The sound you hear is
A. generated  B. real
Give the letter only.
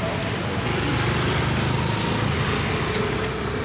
B